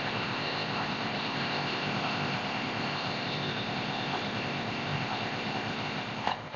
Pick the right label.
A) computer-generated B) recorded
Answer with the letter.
A